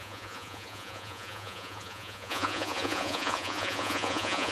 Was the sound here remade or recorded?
remade